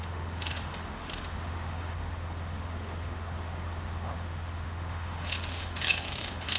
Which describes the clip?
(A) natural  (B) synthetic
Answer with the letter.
B